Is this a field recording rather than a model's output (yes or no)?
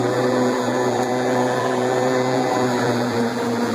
no